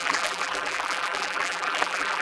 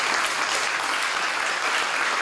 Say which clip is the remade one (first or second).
first